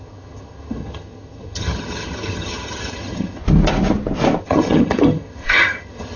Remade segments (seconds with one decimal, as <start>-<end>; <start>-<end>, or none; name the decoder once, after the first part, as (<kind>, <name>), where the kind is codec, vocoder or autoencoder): 0.0-3.4 (vocoder, HiFi-GAN); 4.4-6.2